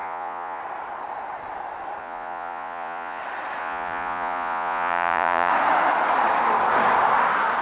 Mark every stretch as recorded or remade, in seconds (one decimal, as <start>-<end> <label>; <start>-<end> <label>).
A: 0.0-0.6 remade; 0.6-2.0 recorded; 2.0-3.2 remade; 3.2-3.6 recorded; 3.6-5.5 remade; 5.5-7.6 recorded